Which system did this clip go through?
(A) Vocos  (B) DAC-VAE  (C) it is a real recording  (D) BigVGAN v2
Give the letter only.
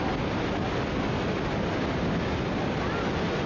C